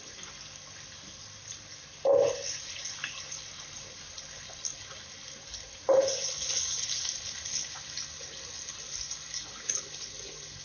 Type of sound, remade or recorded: recorded